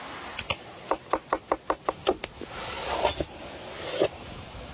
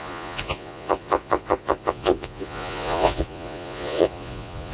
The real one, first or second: first